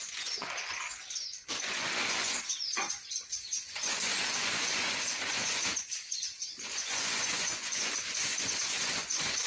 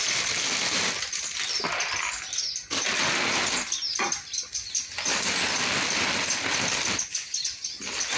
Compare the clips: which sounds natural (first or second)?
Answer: second